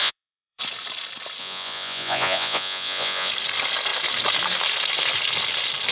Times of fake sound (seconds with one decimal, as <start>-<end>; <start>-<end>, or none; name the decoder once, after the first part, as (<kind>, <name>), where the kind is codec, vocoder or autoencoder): 0.0-0.6 (vocoder, Vocos); 1.4-3.3